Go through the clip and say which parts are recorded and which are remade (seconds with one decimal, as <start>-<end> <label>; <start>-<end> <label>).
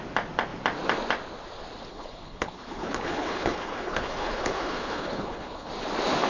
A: 0.0-1.9 recorded; 1.9-5.7 remade; 5.7-6.3 recorded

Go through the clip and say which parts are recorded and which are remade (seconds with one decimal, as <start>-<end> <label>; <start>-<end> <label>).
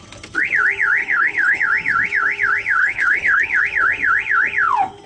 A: 0.0-1.0 recorded; 1.0-1.6 remade; 1.6-2.8 recorded; 2.8-3.6 remade; 3.6-5.1 recorded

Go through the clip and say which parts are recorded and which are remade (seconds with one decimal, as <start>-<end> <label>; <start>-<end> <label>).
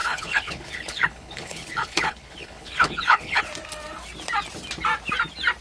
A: 0.0-3.4 remade; 3.4-5.6 recorded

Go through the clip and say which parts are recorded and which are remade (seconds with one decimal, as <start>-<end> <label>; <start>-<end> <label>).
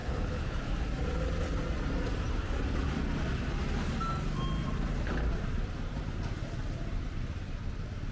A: 0.0-0.6 remade; 0.6-8.1 recorded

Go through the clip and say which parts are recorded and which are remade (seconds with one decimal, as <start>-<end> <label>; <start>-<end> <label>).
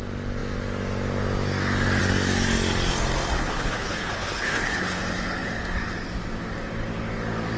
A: 0.0-3.4 recorded; 3.4-5.0 remade; 5.0-7.6 recorded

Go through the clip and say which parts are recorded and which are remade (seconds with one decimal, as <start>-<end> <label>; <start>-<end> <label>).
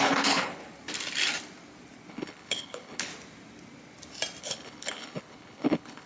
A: 0.0-0.6 remade; 0.6-2.1 recorded; 2.1-3.1 remade; 3.1-4.4 recorded; 4.4-6.1 remade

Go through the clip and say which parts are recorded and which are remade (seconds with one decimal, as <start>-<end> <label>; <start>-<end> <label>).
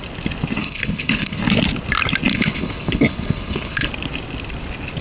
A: 0.0-0.6 recorded; 0.6-1.4 remade; 1.4-2.3 recorded; 2.3-3.9 remade; 3.9-5.0 recorded